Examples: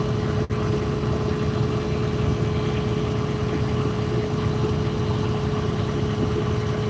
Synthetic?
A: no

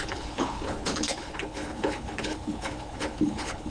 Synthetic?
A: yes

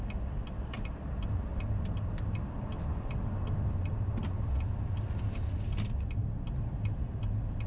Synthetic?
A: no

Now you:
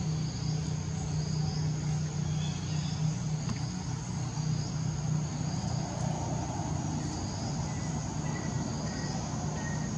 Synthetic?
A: no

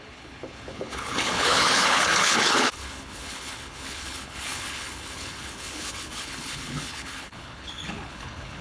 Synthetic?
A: yes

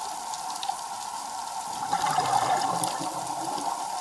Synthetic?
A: no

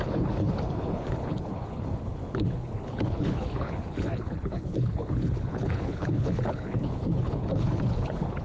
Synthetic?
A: yes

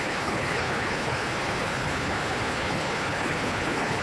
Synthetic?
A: yes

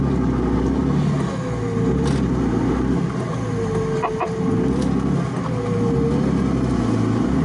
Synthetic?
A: no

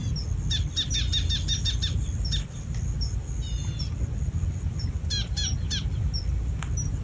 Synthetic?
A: no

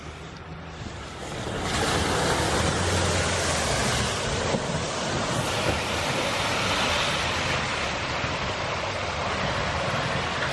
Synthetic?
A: no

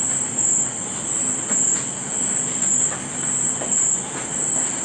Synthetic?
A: no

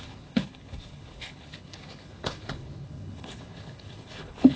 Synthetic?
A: yes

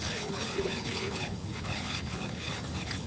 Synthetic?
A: yes